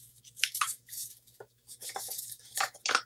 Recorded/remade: remade